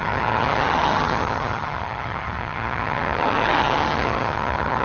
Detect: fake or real fake